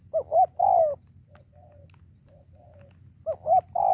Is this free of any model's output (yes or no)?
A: yes